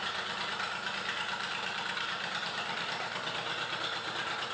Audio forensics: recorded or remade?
remade